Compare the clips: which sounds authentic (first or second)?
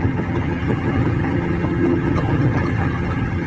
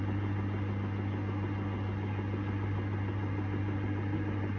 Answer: second